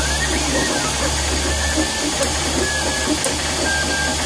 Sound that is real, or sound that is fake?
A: real